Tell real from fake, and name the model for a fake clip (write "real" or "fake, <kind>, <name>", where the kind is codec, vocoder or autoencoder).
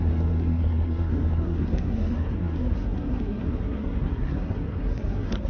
fake, codec, SNAC